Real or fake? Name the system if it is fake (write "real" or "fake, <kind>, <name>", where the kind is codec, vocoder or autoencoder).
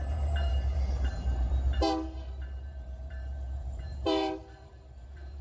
fake, vocoder, BigVGAN v2